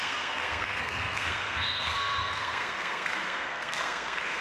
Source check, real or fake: fake